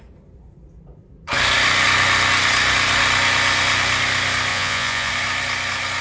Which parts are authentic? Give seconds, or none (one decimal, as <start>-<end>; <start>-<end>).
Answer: 0.0-4.5; 5.1-6.0